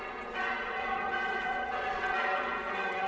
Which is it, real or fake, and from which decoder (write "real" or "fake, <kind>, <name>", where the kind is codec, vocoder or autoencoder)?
fake, vocoder, WaveNeXt